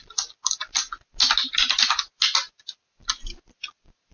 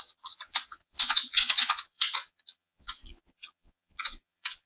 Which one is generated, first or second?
second